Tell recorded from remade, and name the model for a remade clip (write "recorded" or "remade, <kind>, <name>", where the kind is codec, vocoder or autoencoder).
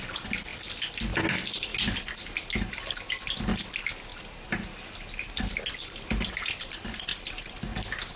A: recorded